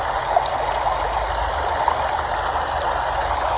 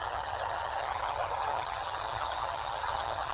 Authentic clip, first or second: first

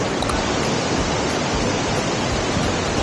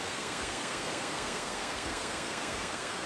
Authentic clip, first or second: first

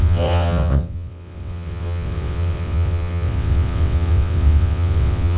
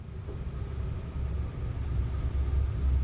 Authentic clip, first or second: second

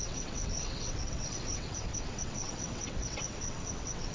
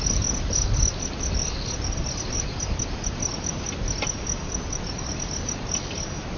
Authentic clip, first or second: second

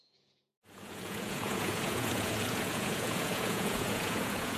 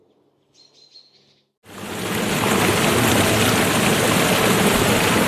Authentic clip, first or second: second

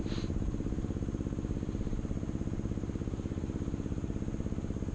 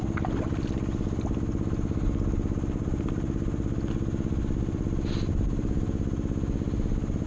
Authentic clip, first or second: second